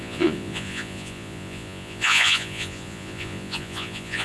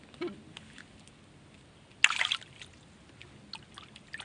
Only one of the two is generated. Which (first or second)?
first